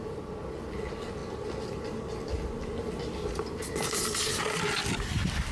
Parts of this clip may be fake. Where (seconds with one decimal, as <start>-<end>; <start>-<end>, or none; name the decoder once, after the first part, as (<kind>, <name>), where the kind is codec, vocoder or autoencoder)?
none

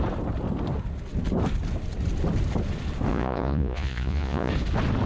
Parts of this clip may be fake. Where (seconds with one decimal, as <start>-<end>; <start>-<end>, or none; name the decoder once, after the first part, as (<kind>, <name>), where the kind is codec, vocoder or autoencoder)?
3.1-4.5 (vocoder, Vocos)

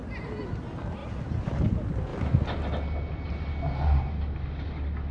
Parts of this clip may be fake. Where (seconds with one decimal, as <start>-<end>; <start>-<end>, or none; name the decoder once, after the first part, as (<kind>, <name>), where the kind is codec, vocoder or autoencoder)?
1.0-1.6 (vocoder, BigVGAN v2)